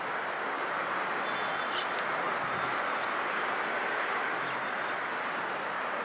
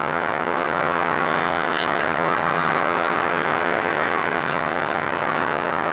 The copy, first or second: second